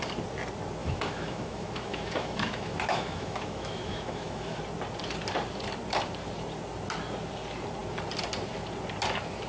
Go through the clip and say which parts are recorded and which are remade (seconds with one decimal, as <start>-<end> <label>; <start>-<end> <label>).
0.0-0.8 recorded; 0.8-4.6 remade; 4.6-9.5 recorded